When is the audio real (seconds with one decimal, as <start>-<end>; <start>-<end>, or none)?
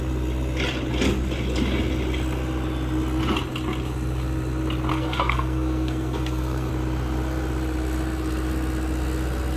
0.0-4.9; 6.7-9.6